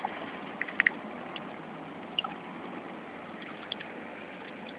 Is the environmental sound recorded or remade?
recorded